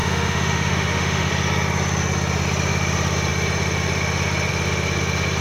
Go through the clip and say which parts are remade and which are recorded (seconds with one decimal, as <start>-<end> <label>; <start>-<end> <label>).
0.0-1.3 remade; 1.3-5.4 recorded